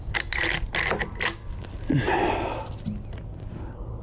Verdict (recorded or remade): recorded